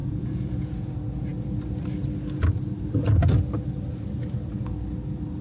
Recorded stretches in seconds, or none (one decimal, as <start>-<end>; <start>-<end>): 0.9-5.4